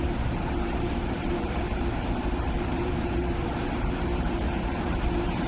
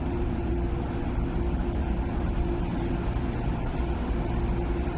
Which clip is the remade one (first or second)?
first